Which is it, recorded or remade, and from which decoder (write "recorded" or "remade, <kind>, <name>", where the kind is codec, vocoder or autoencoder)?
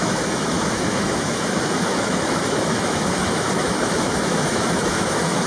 remade, autoencoder, DAC-VAE